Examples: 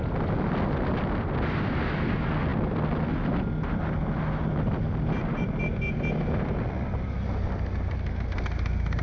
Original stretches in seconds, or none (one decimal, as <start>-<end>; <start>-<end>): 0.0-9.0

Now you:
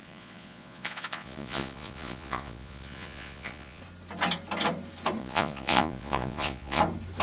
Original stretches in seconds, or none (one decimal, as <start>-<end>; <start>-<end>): 3.8-5.2; 6.8-7.2

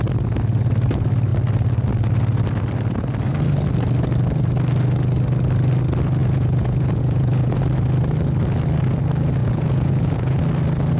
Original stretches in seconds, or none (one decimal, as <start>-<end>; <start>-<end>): 0.0-6.2; 7.6-9.4; 10.4-11.0

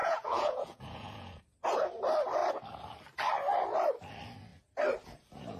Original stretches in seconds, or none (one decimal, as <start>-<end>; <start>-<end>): 1.4-5.6

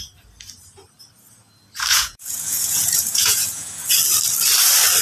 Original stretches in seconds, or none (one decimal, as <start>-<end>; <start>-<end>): 0.0-1.9; 3.9-5.0